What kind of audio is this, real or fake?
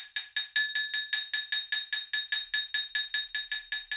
real